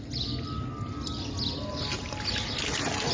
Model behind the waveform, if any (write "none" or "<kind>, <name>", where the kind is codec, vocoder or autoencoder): none